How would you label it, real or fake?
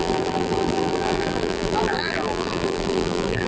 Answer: fake